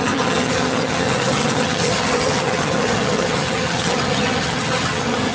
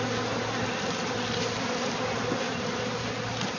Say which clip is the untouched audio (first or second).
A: second